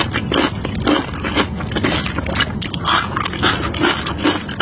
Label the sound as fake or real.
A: real